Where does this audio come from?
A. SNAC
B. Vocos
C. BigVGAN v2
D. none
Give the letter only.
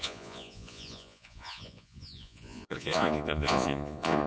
B